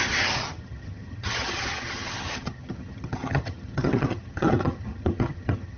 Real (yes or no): no